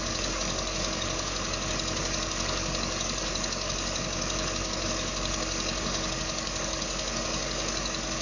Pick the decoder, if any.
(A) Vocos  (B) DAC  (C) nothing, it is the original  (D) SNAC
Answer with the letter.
B